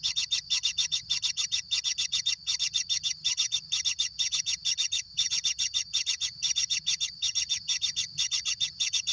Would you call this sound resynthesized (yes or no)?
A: yes